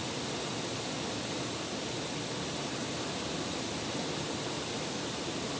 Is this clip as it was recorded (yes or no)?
yes